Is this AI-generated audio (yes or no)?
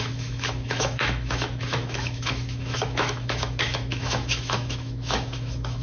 yes